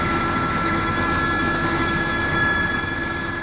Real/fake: fake